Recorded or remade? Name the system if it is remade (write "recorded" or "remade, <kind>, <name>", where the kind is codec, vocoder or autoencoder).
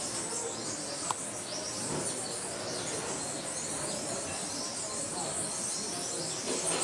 recorded